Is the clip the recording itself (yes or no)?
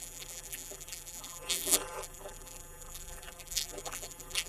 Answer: no